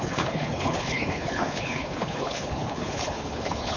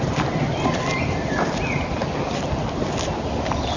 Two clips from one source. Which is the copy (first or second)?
first